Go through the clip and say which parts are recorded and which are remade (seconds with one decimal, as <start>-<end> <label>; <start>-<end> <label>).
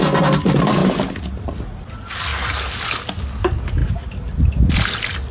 0.0-5.3 recorded